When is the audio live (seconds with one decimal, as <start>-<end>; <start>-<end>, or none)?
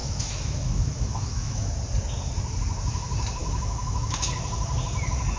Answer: 1.7-3.4; 4.3-5.4